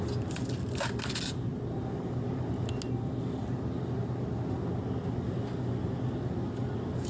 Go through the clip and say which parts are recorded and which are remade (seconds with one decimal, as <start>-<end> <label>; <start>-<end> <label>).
0.0-7.1 recorded